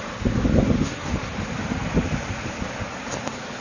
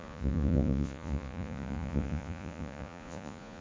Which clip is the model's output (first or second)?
second